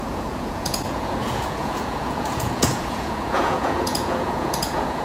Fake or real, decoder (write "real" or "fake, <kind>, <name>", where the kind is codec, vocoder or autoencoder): fake, vocoder, Vocos